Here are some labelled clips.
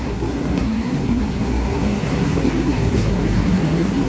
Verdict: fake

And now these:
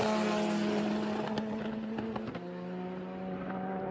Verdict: real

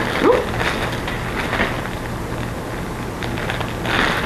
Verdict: real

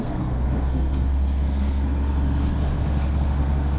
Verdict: fake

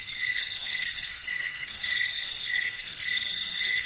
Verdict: fake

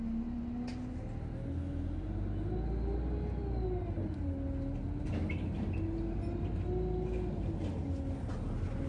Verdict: real